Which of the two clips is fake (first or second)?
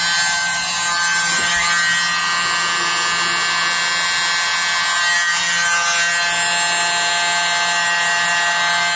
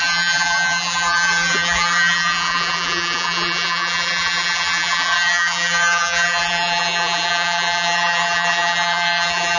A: second